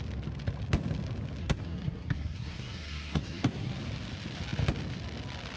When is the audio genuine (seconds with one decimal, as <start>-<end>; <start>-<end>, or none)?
0.0-1.4; 3.7-5.6